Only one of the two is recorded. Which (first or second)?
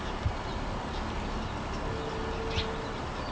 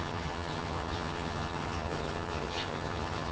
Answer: first